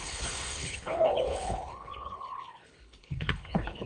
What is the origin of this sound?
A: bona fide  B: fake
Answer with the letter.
B